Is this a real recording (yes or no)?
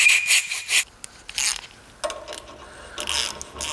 yes